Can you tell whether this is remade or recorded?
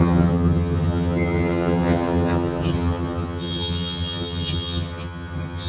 remade